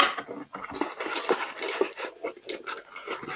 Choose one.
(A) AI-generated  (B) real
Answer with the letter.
B